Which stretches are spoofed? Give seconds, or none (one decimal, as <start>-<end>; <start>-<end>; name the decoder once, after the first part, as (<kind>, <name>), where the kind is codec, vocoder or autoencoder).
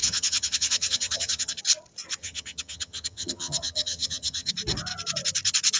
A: 0.0-1.6 (vocoder, HiFi-GAN); 2.2-4.5